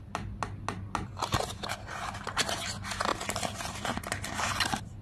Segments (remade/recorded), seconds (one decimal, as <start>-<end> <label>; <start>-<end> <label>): 0.0-5.0 recorded